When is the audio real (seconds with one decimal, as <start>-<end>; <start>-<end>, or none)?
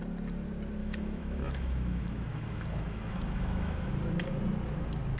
0.0-0.8; 3.9-5.2